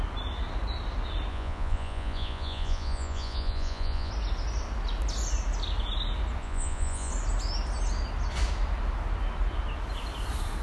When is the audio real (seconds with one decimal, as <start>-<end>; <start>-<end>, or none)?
0.0-1.3; 4.1-6.4; 7.1-10.6